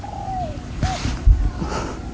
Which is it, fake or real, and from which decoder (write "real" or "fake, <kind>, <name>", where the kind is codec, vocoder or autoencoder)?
fake, vocoder, BigVGAN v2